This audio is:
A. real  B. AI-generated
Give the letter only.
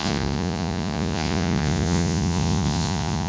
B